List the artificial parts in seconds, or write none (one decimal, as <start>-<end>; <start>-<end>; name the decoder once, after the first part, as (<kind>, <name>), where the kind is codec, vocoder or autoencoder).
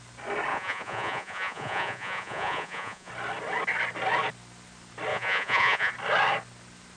0.5-3.1 (vocoder, Vocos); 5.1-5.9